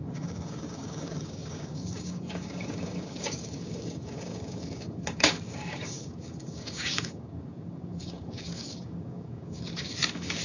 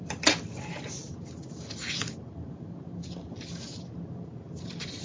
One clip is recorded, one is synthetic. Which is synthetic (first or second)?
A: first